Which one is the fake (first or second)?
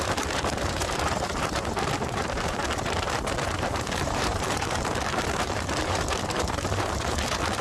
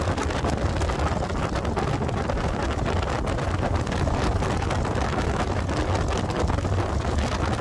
first